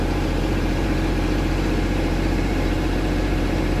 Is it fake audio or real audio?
fake